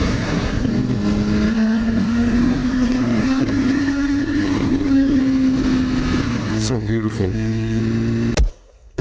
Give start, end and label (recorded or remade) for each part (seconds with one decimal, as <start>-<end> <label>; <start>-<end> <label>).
0.0-0.7 remade; 0.7-1.5 recorded; 1.5-5.2 remade; 5.2-6.2 recorded; 6.2-7.8 remade; 7.8-8.5 recorded; 8.5-9.0 remade

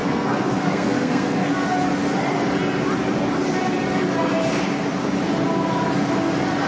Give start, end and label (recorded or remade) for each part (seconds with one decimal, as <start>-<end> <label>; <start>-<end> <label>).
0.0-1.5 remade; 1.5-6.7 recorded

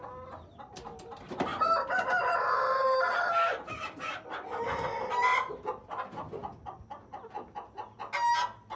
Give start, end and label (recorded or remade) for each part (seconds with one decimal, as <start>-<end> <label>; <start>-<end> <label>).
0.0-8.8 recorded

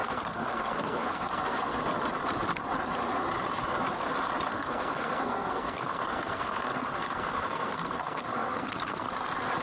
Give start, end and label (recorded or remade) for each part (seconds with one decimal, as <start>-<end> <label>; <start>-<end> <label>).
0.0-1.8 remade; 1.8-4.5 recorded; 4.5-9.1 remade; 9.1-9.6 recorded

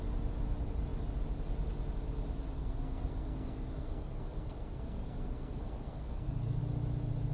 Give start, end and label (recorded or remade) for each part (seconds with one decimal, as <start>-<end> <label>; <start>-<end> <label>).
0.0-2.6 recorded; 2.6-6.6 remade; 6.6-7.3 recorded

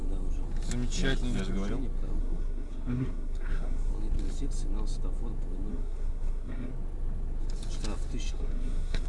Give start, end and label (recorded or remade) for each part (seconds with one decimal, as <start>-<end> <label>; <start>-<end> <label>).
0.0-2.2 recorded; 2.2-3.9 remade; 3.9-5.7 recorded; 5.7-6.7 remade; 6.7-8.3 recorded; 8.3-9.1 remade